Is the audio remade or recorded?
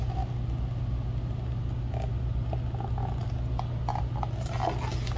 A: recorded